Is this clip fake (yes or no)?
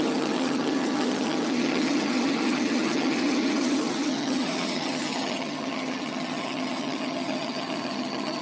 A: yes